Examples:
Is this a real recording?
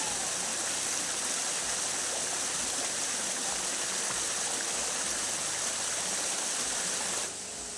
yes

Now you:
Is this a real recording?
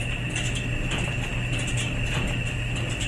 yes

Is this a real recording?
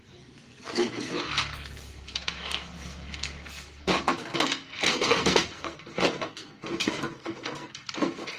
no